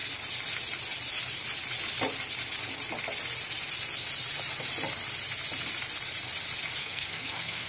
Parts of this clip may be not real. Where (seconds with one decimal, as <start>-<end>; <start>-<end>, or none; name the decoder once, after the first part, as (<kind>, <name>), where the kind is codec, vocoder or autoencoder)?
6.8-7.7 (codec, SNAC)